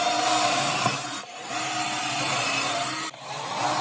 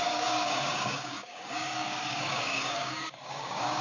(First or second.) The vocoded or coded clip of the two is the second